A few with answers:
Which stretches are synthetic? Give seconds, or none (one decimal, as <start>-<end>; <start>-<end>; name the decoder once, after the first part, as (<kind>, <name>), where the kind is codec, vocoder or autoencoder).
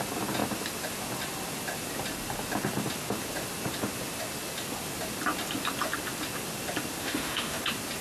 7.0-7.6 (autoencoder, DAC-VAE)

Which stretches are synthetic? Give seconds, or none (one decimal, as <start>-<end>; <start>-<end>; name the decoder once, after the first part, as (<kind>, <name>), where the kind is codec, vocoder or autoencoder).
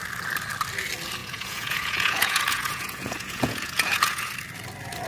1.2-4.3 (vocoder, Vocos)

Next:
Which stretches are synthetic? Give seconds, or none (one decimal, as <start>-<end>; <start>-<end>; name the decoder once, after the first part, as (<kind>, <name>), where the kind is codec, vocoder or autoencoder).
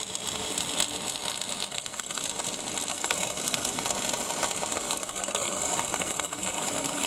1.7-2.2 (codec, SNAC); 2.9-3.8; 4.7-7.1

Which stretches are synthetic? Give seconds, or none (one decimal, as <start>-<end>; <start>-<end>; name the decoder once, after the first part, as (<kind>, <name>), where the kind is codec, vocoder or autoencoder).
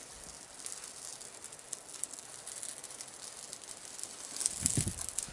none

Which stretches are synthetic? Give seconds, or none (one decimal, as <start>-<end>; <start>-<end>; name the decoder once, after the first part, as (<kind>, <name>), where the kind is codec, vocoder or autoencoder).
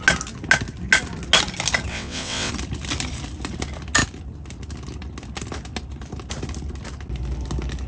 1.9-2.5 (vocoder, WaveNeXt)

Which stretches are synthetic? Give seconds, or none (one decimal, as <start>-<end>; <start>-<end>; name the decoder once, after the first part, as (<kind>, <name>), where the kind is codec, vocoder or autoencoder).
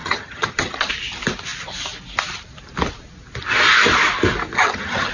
0.0-0.9 (vocoder, HiFi-GAN); 4.5-5.1